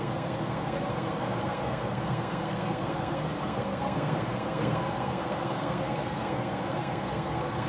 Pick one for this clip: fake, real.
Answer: fake